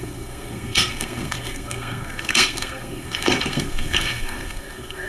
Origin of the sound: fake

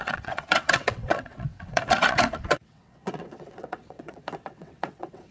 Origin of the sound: fake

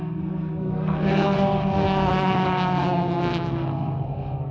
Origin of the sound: fake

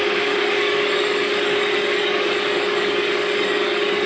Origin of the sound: fake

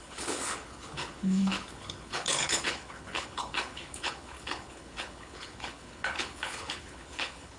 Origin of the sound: fake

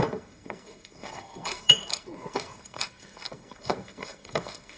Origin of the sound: fake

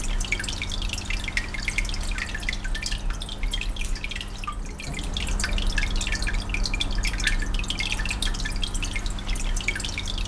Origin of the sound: real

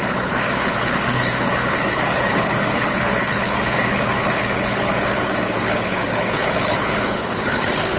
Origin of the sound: fake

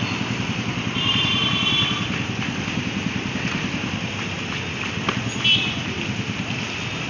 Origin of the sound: real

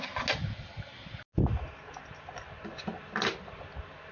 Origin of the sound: real